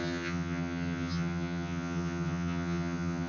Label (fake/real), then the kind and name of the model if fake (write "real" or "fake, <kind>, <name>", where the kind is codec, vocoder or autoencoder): fake, vocoder, HiFi-GAN